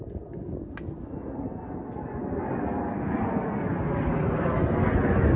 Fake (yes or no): no